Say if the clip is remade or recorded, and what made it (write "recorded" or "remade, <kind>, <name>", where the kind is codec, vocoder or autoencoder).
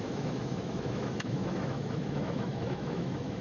remade, autoencoder, DAC-VAE